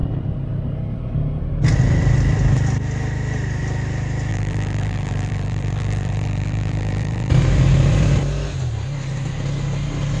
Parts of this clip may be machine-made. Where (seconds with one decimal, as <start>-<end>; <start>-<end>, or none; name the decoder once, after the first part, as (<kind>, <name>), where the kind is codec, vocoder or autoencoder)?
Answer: 4.3-7.3 (vocoder, BigVGAN v2)